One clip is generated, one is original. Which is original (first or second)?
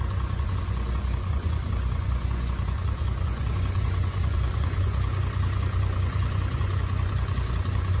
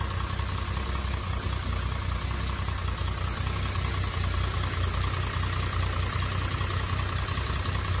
second